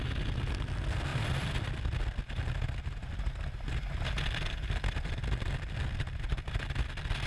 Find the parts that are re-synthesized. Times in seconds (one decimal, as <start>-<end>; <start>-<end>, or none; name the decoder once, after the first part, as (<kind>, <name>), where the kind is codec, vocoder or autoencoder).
none

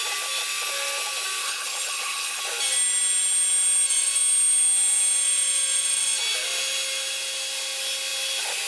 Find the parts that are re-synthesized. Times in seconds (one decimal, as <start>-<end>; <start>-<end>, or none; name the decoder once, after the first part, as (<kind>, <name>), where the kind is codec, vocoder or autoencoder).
1.4-2.4 (codec, HILCodec)